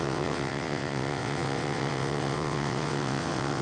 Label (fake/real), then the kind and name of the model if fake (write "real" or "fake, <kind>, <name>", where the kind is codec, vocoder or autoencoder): fake, vocoder, WaveNeXt